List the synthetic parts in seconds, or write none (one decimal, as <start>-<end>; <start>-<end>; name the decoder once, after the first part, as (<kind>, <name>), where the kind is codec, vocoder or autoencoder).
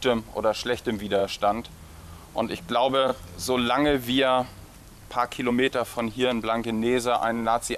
0.0-1.2 (vocoder, BigVGAN v2); 1.9-3.1; 5.5-7.8